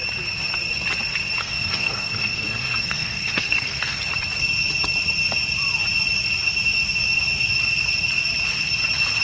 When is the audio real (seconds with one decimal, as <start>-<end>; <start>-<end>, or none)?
0.0-1.4; 4.0-9.2